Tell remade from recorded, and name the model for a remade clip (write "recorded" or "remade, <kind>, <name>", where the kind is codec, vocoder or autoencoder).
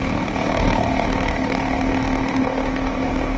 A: remade, codec, DAC